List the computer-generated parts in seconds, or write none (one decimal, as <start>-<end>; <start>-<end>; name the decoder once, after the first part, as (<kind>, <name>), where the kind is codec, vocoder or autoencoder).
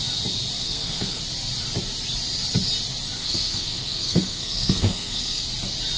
0.6-1.2 (codec, SNAC); 3.2-5.4